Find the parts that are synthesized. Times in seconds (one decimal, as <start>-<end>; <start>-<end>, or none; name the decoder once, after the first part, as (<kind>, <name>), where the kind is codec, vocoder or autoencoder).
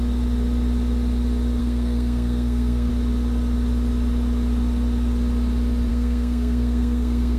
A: 1.6-2.9 (codec, SNAC); 5.9-7.4